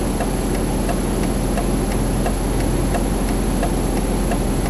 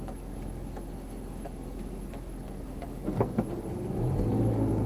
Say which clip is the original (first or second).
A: first